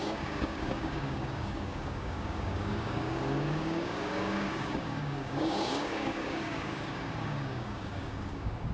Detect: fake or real fake